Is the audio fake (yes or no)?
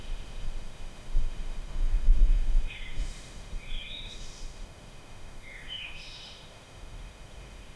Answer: yes